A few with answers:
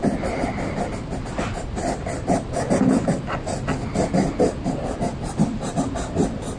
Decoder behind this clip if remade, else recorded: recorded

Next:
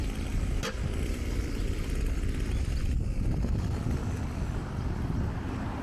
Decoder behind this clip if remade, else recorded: recorded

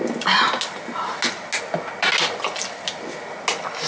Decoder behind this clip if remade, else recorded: recorded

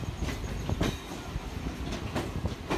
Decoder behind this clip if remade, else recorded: recorded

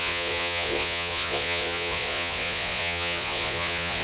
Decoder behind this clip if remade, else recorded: remade, vocoder, Vocos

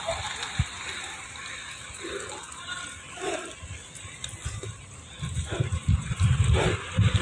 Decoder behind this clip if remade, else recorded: recorded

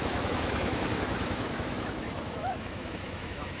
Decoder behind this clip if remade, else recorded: remade, autoencoder, DAC-VAE